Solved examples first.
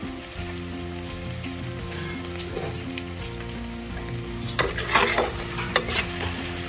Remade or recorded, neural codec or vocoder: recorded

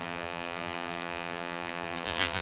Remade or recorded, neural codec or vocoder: remade, vocoder, BigVGAN v2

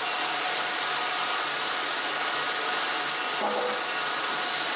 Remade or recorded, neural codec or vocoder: recorded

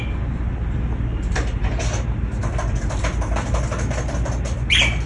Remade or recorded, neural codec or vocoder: recorded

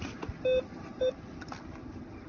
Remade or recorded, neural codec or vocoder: recorded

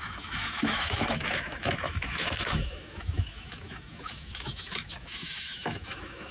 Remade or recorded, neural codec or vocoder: remade, autoencoder, DAC-VAE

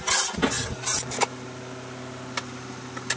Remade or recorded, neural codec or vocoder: recorded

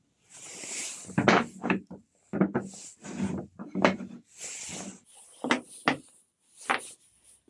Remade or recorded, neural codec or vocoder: recorded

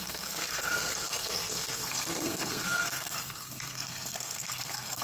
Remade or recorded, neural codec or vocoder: remade, codec, SNAC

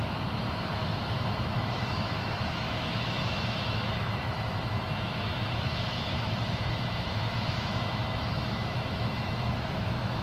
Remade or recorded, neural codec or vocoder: remade, autoencoder, DAC-VAE